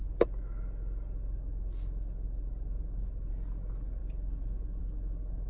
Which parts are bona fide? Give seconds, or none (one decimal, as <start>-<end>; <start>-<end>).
0.0-5.5